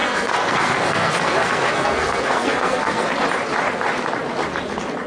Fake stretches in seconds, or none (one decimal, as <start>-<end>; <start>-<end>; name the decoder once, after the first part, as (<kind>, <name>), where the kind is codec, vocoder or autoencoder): 0.0-3.1 (codec, SNAC)